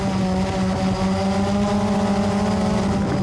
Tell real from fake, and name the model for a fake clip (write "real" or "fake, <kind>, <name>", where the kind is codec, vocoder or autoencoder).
real